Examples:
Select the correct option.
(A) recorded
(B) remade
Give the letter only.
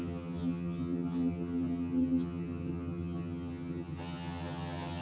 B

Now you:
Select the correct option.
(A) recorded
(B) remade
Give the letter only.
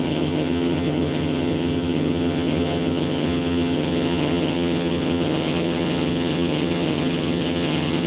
B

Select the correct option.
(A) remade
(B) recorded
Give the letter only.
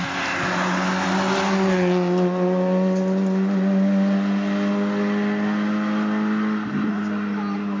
B